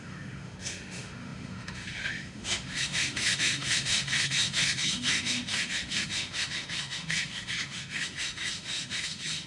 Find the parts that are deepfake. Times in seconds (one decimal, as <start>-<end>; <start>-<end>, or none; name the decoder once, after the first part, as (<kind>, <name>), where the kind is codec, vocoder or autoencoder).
0.0-9.5 (autoencoder, DAC-VAE)